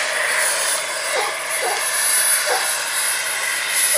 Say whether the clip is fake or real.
real